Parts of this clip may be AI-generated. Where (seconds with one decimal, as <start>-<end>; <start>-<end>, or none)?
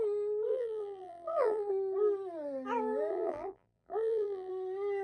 0.5-1.7; 3.1-4.5